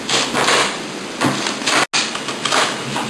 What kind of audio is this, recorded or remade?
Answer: recorded